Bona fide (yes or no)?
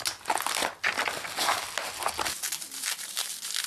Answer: yes